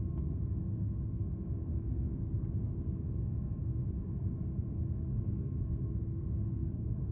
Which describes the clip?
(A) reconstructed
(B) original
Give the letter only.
A